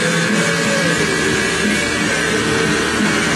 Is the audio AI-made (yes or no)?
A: no